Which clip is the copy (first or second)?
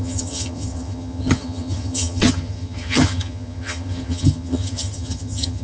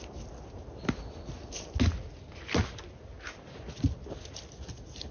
first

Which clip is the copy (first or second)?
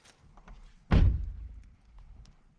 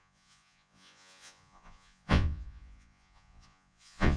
second